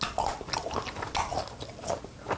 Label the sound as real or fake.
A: real